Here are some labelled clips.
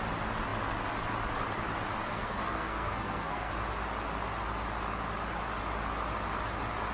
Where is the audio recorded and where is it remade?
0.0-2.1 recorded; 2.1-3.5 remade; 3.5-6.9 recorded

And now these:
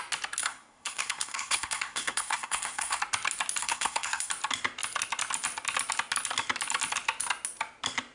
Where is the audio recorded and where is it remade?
0.0-0.4 recorded; 0.4-3.0 remade; 3.0-3.6 recorded; 3.6-4.3 remade; 4.3-8.1 recorded

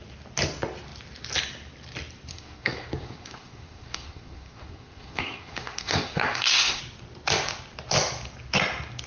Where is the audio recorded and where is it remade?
0.0-2.3 recorded; 2.3-6.8 remade; 6.8-9.1 recorded

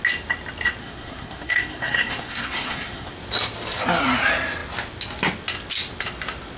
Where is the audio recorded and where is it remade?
0.0-0.8 recorded; 0.8-3.1 remade; 3.1-6.6 recorded